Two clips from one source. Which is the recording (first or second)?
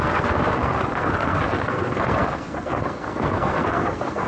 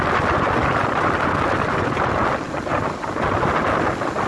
second